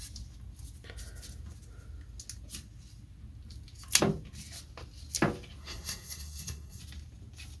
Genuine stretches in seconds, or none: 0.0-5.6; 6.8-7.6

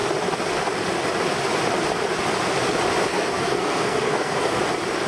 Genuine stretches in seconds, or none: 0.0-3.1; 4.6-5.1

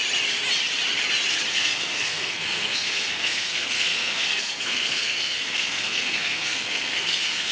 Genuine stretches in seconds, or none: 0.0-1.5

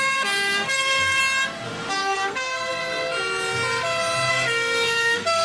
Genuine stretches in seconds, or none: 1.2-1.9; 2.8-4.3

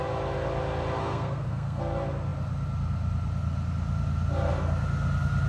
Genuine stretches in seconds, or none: 0.0-1.0; 1.8-5.5

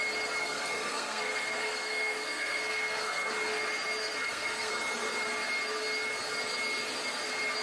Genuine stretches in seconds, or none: 0.0-0.4; 3.3-4.0; 4.7-7.6

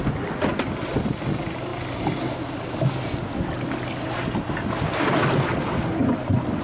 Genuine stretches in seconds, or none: 0.0-6.6